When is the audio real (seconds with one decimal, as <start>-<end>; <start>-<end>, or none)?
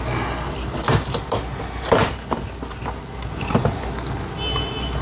0.0-5.0